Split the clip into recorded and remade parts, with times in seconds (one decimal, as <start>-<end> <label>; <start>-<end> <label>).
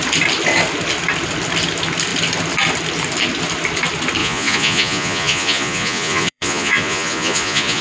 0.0-4.2 recorded; 4.2-7.8 remade